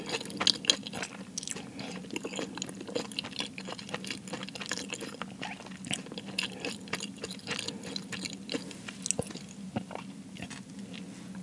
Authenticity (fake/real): real